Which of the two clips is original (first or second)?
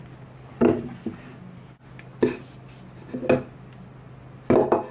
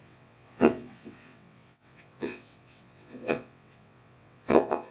first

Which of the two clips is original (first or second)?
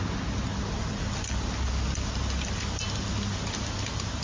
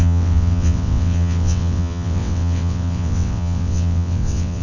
first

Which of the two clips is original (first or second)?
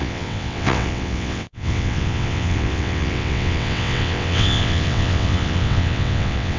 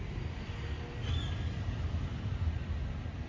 second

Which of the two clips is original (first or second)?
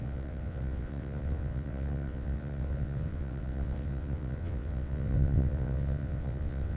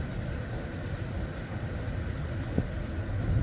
second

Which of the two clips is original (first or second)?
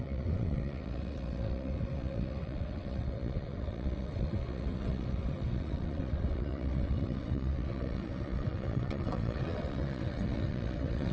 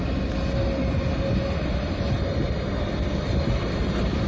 second